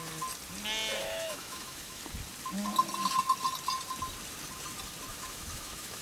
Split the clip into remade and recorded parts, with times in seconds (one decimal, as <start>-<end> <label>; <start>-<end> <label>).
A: 0.0-1.0 recorded; 1.0-2.0 remade; 2.0-5.1 recorded; 5.1-6.0 remade